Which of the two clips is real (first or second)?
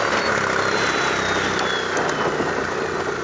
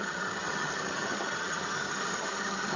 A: first